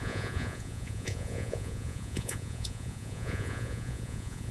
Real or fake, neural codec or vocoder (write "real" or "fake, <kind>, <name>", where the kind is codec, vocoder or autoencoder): fake, vocoder, Vocos